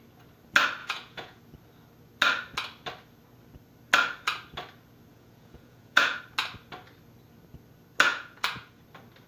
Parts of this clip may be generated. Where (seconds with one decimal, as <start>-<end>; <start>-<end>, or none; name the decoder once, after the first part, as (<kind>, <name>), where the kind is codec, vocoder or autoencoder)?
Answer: 0.8-1.4 (vocoder, Vocos); 5.1-6.2; 8.1-8.8